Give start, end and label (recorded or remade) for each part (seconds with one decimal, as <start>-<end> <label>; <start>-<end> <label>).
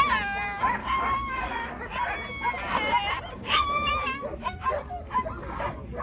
0.0-0.8 recorded; 0.8-1.8 remade; 1.8-3.4 recorded; 3.4-3.9 remade; 3.9-6.0 recorded